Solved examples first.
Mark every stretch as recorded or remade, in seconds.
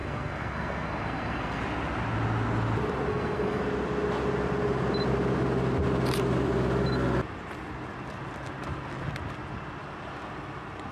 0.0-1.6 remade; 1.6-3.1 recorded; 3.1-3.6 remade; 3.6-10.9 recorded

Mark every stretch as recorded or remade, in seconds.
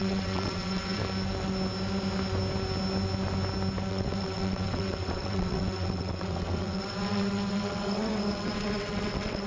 0.0-1.0 remade; 1.0-3.9 recorded; 3.9-9.5 remade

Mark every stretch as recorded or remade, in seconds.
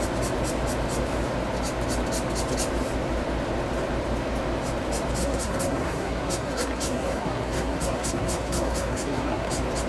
0.0-5.2 recorded; 5.2-9.5 remade; 9.5-9.9 recorded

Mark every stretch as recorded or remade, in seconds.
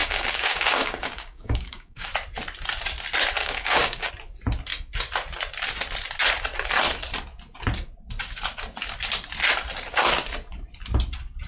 0.0-2.1 remade; 2.1-3.4 recorded; 3.4-4.1 remade; 4.1-11.5 recorded